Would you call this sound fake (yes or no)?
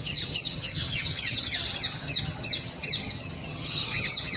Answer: yes